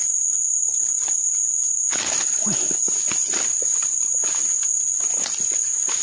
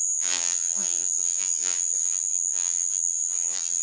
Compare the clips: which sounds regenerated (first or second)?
second